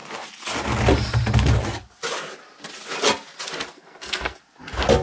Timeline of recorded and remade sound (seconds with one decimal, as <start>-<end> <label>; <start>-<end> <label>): 0.0-3.7 recorded; 3.7-4.4 remade; 4.4-5.0 recorded